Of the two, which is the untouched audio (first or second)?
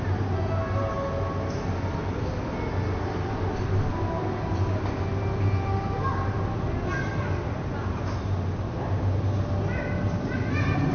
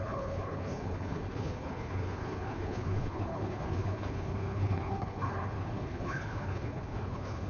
first